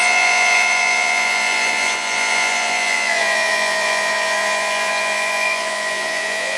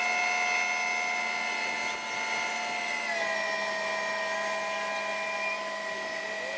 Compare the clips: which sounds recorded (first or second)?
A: second